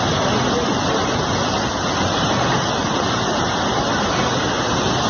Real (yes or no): yes